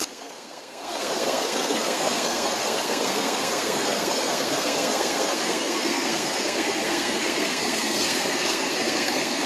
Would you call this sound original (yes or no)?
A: no